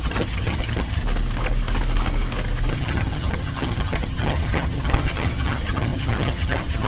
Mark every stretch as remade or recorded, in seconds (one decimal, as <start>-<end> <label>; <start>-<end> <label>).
0.0-1.0 remade; 1.0-2.7 recorded; 2.7-6.9 remade